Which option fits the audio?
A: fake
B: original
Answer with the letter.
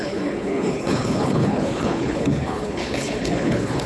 A